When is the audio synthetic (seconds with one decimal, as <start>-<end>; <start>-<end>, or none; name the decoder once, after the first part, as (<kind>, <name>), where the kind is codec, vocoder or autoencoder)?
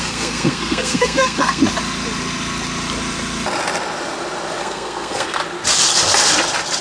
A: 0.0-1.6 (codec, SNAC); 4.6-5.4